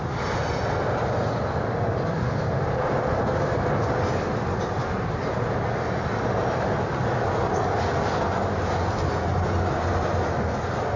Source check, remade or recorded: recorded